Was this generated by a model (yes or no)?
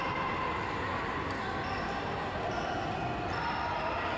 no